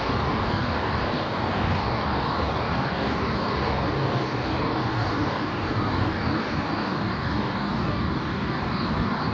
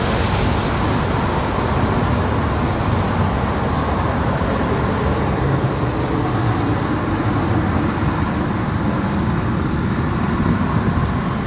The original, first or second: second